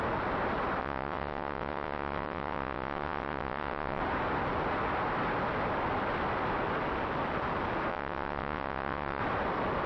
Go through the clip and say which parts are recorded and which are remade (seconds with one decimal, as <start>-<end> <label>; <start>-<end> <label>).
0.0-0.8 recorded; 0.8-4.0 remade; 4.0-7.9 recorded; 7.9-9.2 remade; 9.2-9.9 recorded